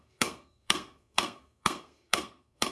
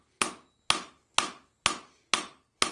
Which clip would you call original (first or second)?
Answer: second